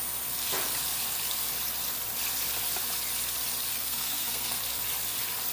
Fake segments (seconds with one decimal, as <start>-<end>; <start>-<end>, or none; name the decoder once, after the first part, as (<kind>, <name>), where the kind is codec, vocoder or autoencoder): 3.7-4.6 (codec, SNAC)